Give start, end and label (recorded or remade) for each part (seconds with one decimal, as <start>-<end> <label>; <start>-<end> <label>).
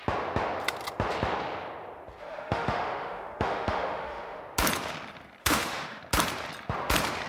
0.0-2.2 recorded; 2.2-4.4 remade; 4.4-5.4 recorded; 5.4-6.0 remade; 6.0-7.3 recorded